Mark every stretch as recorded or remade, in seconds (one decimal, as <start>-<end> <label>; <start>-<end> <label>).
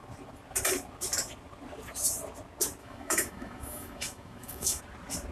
0.0-2.8 recorded; 2.8-4.8 remade; 4.8-5.3 recorded